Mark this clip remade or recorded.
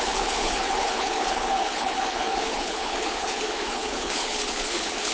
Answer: remade